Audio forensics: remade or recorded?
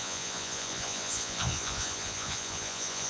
remade